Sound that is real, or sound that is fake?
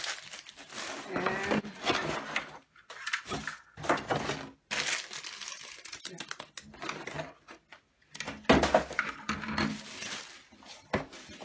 real